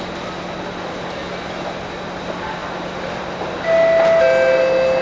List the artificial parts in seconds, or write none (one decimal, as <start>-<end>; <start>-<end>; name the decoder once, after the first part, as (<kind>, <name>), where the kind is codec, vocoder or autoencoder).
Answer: none